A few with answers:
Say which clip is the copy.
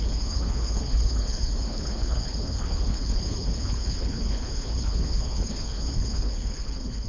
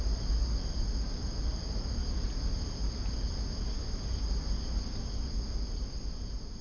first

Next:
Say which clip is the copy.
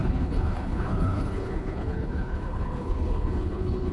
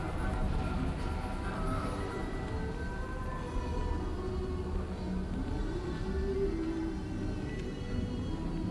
first